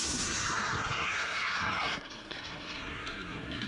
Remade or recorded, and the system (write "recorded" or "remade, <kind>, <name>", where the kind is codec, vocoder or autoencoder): remade, codec, SNAC